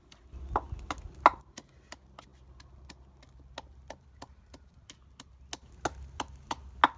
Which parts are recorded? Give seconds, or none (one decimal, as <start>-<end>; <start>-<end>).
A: 0.0-7.0